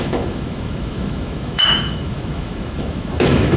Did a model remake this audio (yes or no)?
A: yes